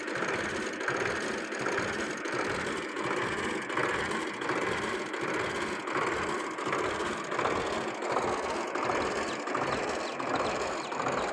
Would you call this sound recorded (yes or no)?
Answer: yes